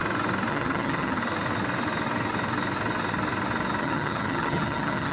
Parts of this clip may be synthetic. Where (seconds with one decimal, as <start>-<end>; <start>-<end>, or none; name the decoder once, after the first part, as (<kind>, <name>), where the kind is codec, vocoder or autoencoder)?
0.5-1.2 (vocoder, HiFi-GAN); 3.8-5.1